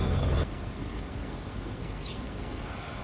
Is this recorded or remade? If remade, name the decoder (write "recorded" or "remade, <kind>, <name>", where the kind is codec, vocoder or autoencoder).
remade, codec, SNAC